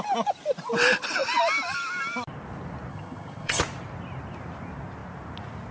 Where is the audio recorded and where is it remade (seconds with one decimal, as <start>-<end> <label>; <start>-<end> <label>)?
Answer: 0.0-2.9 recorded; 2.9-3.6 remade; 3.6-5.7 recorded